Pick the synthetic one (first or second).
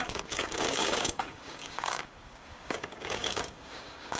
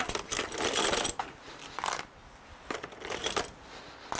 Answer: first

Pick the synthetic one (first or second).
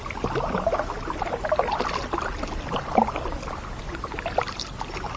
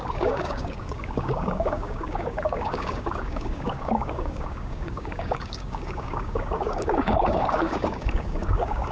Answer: second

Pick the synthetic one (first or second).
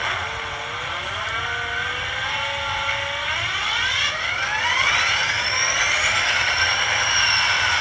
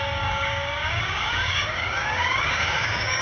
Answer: second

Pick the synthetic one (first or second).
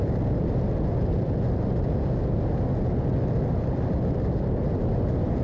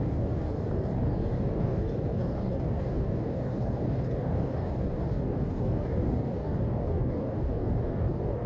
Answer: second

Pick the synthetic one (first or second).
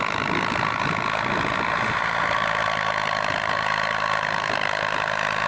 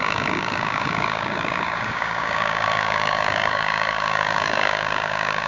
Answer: second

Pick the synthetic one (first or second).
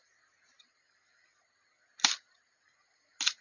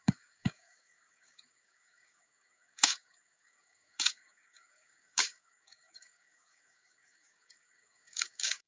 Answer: second